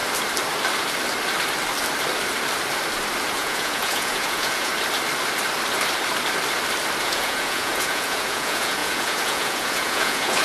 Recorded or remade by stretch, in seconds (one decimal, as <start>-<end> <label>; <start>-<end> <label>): 0.0-3.3 recorded; 3.3-4.7 remade; 4.7-7.0 recorded; 7.0-10.4 remade

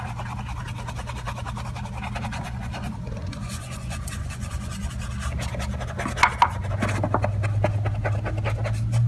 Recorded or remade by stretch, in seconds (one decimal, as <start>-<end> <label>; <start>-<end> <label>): 0.0-2.3 recorded; 2.3-4.9 remade; 4.9-9.1 recorded

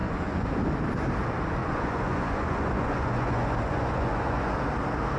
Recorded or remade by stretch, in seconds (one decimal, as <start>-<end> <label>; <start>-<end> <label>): 0.0-0.5 remade; 0.5-1.6 recorded; 1.6-4.5 remade; 4.5-5.2 recorded

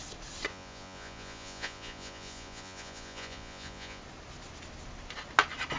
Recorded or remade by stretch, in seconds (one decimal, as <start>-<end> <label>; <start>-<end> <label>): 0.0-0.5 recorded; 0.5-4.0 remade; 4.0-5.8 recorded

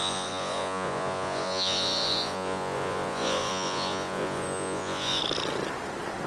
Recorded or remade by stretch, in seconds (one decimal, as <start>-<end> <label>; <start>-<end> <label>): 0.0-5.2 remade; 5.2-6.3 recorded

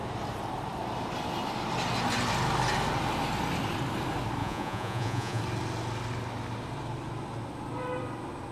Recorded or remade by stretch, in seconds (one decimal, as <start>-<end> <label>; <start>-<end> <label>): 0.0-4.4 recorded; 4.4-5.4 remade; 5.4-8.5 recorded